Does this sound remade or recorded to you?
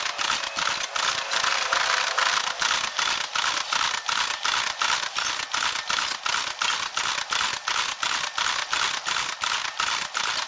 recorded